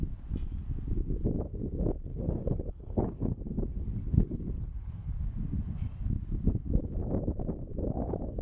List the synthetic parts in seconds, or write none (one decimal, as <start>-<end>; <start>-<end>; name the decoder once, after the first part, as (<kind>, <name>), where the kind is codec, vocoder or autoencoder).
2.1-3.4 (codec, HILCodec); 4.0-5.2